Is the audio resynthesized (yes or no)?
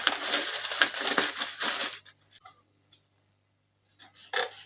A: no